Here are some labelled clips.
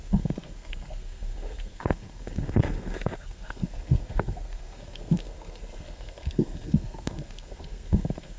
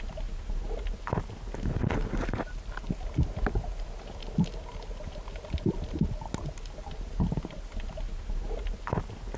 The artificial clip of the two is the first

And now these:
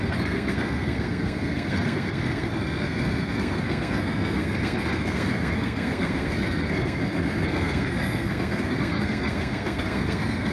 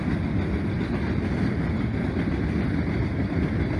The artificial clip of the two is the first